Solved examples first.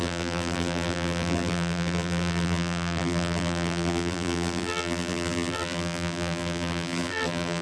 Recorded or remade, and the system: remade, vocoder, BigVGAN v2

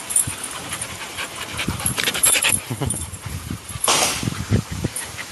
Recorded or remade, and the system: remade, vocoder, BigVGAN v2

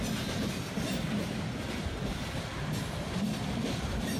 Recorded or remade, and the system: recorded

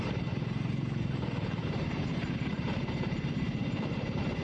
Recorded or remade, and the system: remade, vocoder, BigVGAN v2